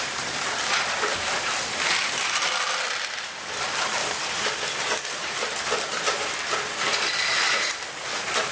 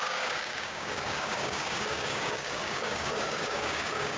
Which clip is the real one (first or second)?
first